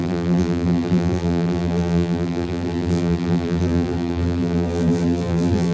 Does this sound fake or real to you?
fake